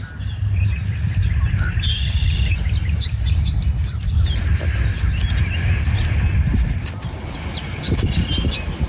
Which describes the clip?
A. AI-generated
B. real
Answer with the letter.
B